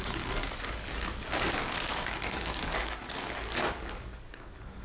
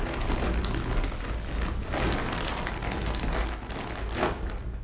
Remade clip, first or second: first